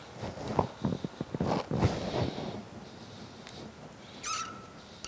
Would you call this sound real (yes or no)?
yes